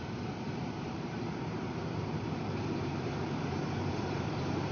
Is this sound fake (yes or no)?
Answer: yes